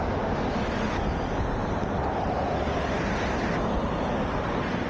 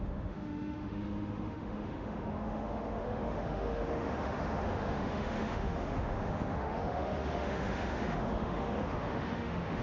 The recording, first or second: first